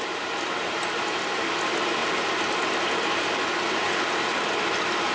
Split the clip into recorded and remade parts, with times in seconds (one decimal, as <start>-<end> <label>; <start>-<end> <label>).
0.0-5.1 recorded